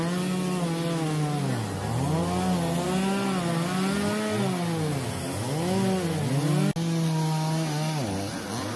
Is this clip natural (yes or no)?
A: yes